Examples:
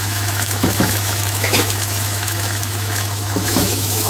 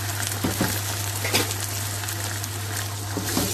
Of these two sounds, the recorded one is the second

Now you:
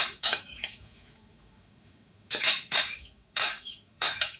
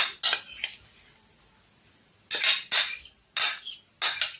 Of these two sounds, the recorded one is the second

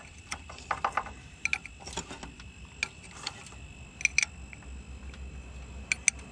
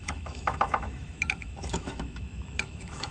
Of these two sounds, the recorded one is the first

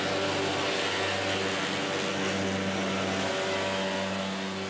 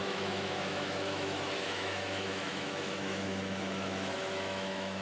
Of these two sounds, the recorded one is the first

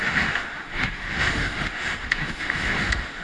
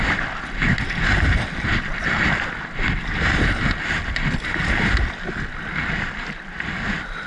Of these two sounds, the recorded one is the second